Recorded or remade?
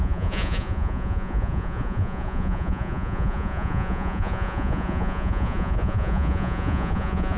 remade